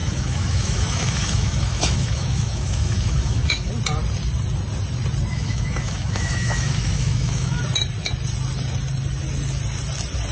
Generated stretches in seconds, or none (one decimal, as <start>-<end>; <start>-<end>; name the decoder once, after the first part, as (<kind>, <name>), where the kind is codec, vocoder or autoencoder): 0.0-3.7 (autoencoder, DAC-VAE); 5.3-7.6